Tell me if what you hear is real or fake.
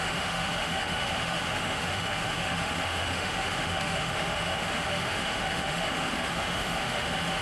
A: fake